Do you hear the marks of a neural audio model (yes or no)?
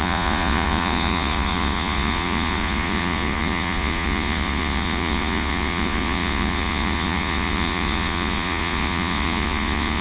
yes